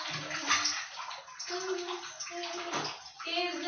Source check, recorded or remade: recorded